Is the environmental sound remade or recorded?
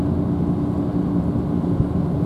recorded